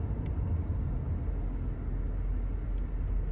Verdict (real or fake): real